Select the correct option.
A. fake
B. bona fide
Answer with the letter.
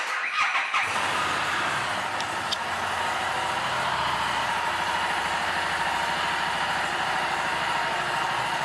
B